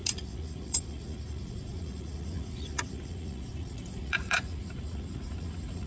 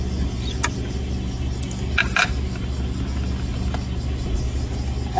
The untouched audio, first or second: second